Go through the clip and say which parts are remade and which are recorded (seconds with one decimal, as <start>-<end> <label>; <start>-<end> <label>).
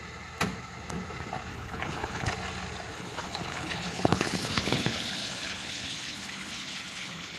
0.0-1.5 recorded; 1.5-2.3 remade; 2.3-2.9 recorded; 2.9-7.4 remade